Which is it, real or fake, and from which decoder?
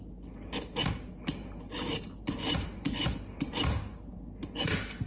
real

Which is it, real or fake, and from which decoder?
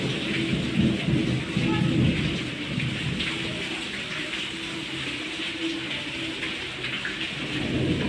real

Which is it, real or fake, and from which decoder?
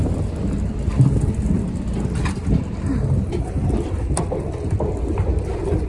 real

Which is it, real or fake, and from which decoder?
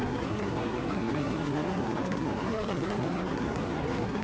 fake, codec, SNAC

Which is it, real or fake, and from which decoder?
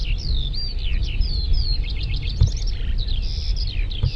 real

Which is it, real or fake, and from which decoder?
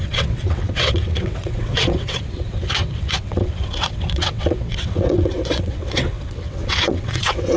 fake, vocoder, WaveNeXt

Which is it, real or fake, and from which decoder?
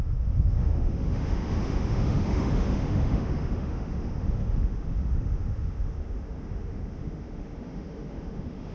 fake, autoencoder, DAC-VAE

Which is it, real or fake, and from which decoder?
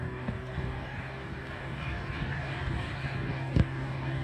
fake, codec, DAC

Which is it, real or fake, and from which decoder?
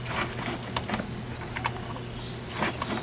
real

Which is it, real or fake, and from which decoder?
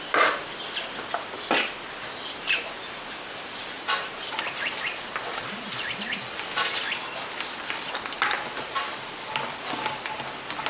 real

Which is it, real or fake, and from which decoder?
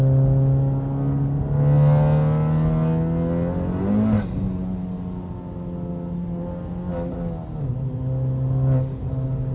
real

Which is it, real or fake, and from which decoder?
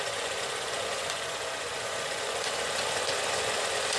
fake, vocoder, Vocos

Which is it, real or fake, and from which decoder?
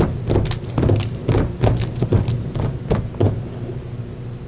real